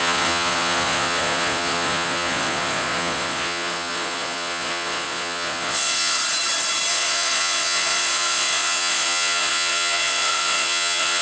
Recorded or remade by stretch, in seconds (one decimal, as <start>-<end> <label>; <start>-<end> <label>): 0.0-6.2 remade; 6.2-6.9 recorded; 6.9-11.2 remade

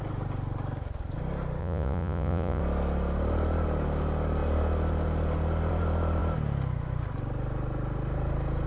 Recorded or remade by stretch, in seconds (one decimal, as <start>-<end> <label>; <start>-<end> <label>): 0.0-1.6 recorded; 1.6-2.6 remade; 2.6-8.7 recorded

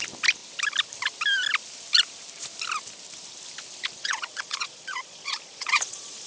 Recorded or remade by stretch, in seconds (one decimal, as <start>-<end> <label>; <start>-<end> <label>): 0.0-4.0 recorded; 4.0-6.3 remade

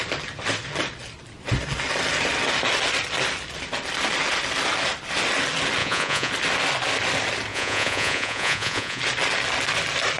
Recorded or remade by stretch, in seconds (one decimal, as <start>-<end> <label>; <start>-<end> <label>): 0.0-5.8 recorded; 5.8-6.3 remade; 6.3-7.5 recorded; 7.5-9.0 remade; 9.0-10.2 recorded